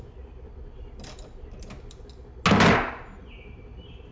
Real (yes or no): yes